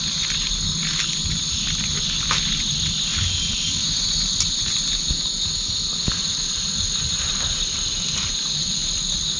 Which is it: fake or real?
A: real